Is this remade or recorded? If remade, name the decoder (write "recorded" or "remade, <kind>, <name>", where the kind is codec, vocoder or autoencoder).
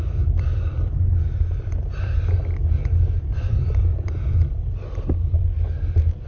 recorded